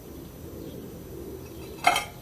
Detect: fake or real real